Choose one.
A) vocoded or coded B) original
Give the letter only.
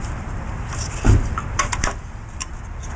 A